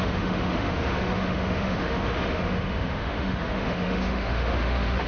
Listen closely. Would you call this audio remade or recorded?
remade